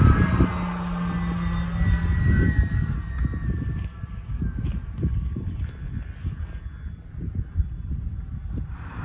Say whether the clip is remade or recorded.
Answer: recorded